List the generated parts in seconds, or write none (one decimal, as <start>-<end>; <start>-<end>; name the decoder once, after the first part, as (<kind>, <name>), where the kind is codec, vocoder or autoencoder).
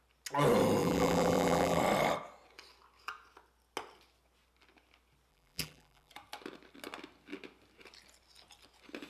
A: 0.8-1.8 (vocoder, BigVGAN v2); 5.3-6.1